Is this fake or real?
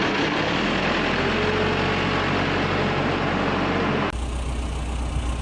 real